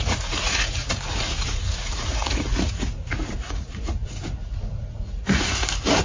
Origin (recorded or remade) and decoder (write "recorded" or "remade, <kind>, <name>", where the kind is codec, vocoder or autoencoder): remade, vocoder, Vocos